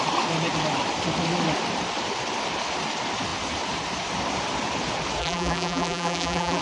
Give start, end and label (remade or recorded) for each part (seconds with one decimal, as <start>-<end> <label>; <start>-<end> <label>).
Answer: 0.0-5.2 recorded; 5.2-6.6 remade